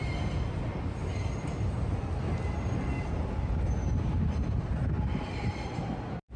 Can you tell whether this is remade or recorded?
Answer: recorded